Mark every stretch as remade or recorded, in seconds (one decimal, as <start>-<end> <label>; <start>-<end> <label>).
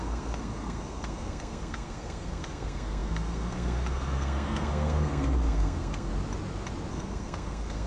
0.0-6.1 remade; 6.1-6.9 recorded; 6.9-7.9 remade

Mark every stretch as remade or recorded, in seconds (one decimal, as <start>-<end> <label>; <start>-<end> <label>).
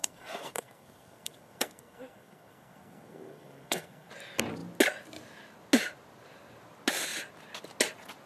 0.0-4.1 remade; 4.1-8.3 recorded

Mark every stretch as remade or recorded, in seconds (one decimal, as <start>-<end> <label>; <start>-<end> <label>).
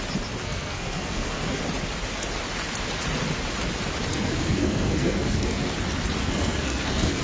0.0-0.4 recorded; 0.4-1.6 remade; 1.6-4.1 recorded; 4.1-5.7 remade; 5.7-6.2 recorded; 6.2-7.2 remade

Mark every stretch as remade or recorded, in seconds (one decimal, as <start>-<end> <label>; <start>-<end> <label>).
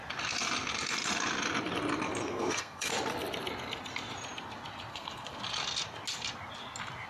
0.0-2.2 recorded; 2.2-2.9 remade; 2.9-4.9 recorded; 4.9-5.4 remade; 5.4-7.1 recorded